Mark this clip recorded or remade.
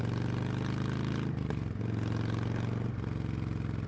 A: recorded